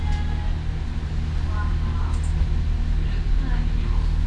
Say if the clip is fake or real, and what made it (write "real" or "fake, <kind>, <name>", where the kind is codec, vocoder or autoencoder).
real